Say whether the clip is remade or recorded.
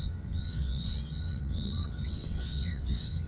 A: remade